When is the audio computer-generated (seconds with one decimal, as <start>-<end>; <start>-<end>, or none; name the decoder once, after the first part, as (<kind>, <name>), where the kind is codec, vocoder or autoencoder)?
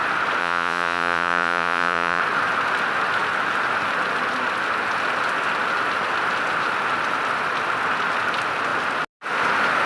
0.4-2.2 (vocoder, Vocos)